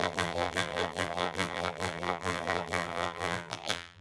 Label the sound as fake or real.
fake